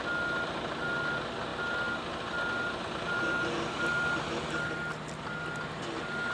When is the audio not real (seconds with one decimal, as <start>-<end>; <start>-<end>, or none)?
none